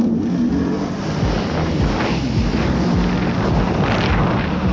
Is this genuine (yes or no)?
yes